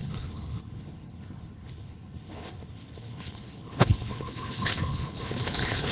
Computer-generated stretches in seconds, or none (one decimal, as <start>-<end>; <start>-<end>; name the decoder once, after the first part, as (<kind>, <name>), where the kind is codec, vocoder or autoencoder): 0.0-5.9 (codec, HILCodec)